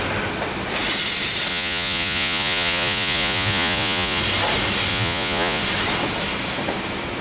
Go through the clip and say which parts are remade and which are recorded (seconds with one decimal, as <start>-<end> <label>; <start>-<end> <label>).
0.0-1.5 recorded; 1.5-4.2 remade; 4.2-4.9 recorded; 4.9-5.6 remade; 5.6-7.2 recorded